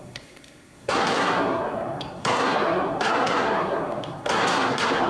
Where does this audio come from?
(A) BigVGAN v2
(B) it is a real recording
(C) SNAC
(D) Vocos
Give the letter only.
C